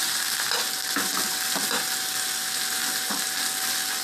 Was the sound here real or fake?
real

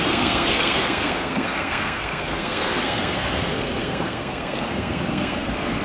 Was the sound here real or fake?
fake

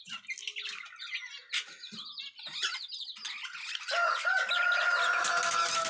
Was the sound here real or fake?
real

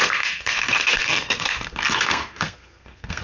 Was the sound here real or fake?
fake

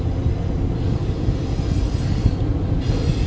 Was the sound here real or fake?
real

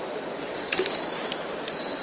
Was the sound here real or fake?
real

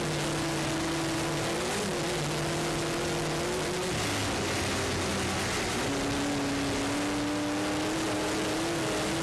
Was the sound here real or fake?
real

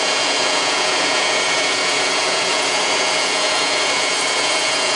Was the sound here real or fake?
fake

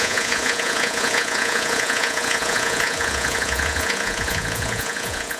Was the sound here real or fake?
fake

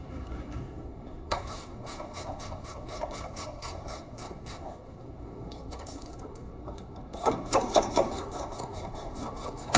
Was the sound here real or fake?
fake